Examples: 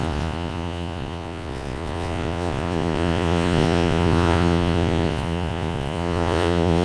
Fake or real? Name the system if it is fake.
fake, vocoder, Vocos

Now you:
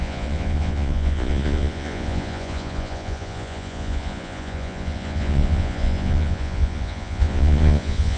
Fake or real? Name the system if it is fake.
fake, vocoder, Vocos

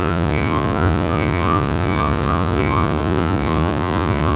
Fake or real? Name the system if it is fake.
fake, vocoder, Vocos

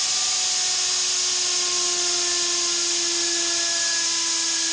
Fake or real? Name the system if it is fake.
real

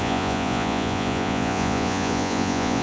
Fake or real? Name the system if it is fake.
fake, vocoder, Vocos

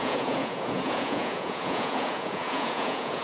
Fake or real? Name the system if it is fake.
fake, vocoder, Vocos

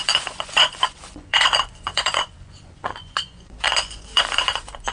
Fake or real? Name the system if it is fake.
fake, vocoder, Vocos